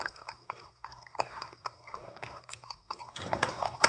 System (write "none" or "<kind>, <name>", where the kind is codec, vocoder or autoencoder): codec, SNAC